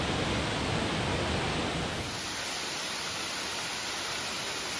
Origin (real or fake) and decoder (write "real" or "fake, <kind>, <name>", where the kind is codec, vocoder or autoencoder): real